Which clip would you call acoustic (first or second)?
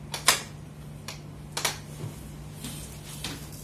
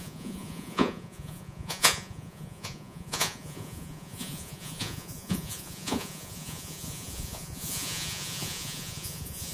first